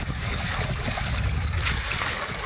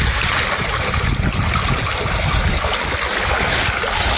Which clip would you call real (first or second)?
second